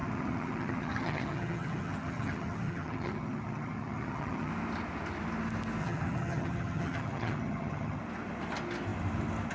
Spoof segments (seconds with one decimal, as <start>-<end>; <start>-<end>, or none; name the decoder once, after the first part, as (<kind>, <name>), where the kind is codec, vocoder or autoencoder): 0.0-4.5 (vocoder, HiFi-GAN); 5.8-8.0